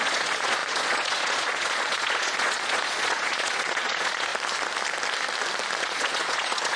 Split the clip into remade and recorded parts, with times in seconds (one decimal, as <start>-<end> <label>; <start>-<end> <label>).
0.0-4.3 remade; 4.3-5.8 recorded; 5.8-6.8 remade